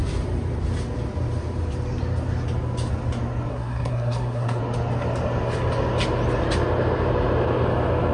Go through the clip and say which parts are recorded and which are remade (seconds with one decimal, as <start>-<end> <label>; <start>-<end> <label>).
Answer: 0.0-3.5 recorded; 3.5-4.6 remade; 4.6-8.1 recorded